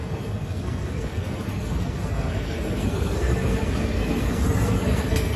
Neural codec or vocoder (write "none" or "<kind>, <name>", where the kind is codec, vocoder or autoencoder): codec, SNAC